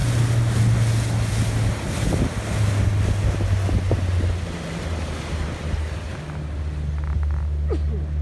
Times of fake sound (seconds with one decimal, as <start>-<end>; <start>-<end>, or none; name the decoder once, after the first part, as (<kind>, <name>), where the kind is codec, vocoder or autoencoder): none